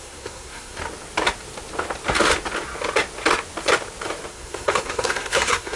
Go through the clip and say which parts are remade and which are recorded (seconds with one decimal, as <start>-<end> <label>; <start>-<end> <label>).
0.0-0.8 remade; 0.8-4.3 recorded; 4.3-5.8 remade